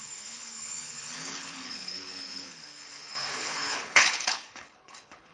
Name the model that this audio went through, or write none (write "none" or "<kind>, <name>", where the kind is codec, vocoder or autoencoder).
codec, HILCodec